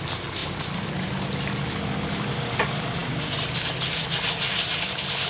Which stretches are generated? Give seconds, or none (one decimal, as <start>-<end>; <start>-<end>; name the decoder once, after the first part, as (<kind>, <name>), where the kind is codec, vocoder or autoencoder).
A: none